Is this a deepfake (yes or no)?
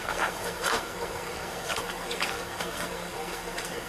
yes